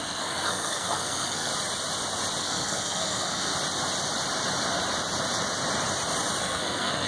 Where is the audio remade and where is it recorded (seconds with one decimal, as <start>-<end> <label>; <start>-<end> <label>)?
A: 0.0-1.5 remade; 1.5-2.4 recorded; 2.4-3.5 remade; 3.5-6.4 recorded; 6.4-7.1 remade